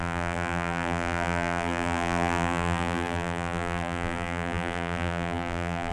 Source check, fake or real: fake